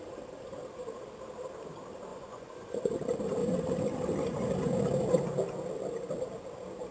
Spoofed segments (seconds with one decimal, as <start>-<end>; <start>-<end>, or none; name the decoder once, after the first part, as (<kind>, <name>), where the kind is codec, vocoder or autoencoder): 2.1-2.9 (vocoder, Vocos)